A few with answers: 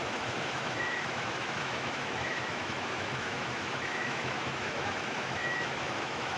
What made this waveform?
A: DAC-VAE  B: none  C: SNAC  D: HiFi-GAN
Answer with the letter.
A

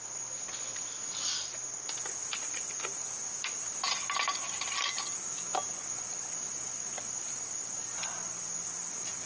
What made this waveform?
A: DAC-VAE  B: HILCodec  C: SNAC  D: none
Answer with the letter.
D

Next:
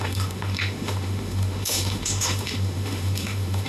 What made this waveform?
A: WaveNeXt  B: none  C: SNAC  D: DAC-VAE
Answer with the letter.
D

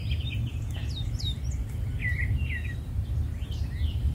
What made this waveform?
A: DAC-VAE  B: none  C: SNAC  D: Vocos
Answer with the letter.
B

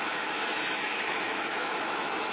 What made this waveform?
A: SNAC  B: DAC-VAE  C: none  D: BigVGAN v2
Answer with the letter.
B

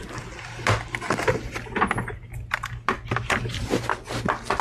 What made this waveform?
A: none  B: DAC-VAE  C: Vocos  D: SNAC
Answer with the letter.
A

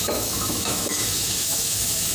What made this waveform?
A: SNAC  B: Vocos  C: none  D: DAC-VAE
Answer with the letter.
D